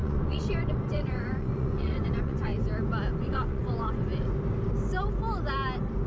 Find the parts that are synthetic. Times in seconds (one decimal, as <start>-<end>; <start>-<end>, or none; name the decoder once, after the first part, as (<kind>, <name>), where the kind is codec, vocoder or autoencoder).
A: 0.0-2.5 (vocoder, Vocos); 3.2-4.1